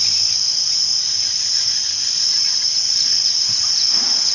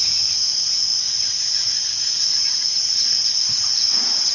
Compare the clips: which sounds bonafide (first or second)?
first